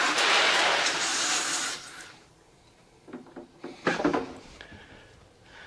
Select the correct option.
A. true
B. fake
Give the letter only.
B